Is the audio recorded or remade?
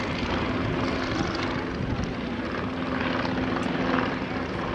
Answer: recorded